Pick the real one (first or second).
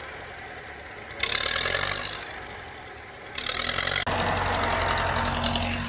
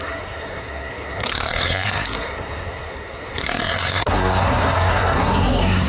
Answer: first